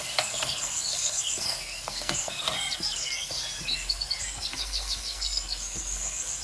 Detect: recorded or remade remade